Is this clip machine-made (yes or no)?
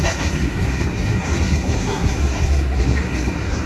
yes